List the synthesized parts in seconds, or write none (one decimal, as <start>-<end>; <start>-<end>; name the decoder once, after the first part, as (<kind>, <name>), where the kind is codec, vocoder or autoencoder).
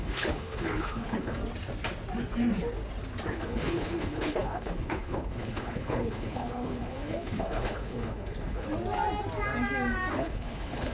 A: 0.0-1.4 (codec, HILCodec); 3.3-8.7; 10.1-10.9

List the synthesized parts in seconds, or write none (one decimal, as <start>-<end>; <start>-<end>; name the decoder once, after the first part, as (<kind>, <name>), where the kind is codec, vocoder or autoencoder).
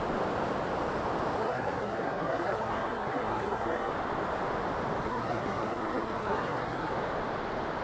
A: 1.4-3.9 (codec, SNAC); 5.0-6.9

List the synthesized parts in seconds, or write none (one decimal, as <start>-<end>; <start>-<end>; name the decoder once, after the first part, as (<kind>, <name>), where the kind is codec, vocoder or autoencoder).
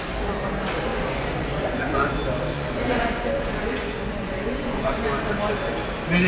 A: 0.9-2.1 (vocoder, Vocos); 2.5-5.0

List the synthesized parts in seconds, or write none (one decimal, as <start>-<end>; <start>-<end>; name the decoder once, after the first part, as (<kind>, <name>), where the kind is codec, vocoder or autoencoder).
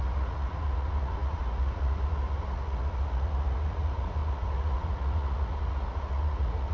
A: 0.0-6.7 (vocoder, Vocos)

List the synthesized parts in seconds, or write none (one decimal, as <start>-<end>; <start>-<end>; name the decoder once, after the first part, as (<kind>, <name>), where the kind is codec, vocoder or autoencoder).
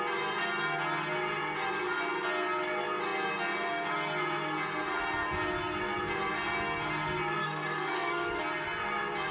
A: 7.4-8.4 (codec, DAC)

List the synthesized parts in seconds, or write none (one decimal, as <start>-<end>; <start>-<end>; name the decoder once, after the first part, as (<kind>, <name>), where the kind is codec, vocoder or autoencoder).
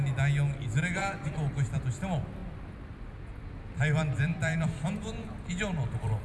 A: 1.0-1.8 (vocoder, BigVGAN v2); 2.4-6.2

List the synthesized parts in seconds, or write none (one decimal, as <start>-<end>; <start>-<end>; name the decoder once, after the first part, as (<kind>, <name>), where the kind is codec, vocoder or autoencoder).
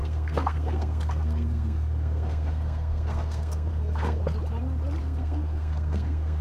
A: 0.0-4.2 (codec, SNAC); 5.0-6.4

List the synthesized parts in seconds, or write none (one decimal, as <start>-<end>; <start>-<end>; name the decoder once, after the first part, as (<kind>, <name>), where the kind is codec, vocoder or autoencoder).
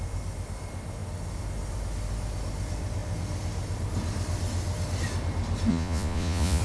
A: 5.7-6.6 (vocoder, Vocos)